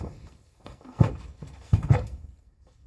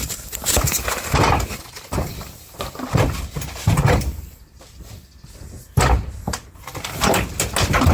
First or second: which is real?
second